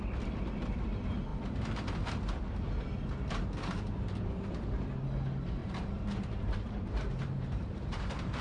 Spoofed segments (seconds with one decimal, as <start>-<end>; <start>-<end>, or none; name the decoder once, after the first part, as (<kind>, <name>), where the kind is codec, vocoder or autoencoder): 1.3-2.2 (vocoder, BigVGAN v2); 5.6-8.4